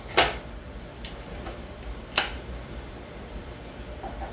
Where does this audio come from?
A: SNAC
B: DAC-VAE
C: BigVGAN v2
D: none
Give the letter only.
C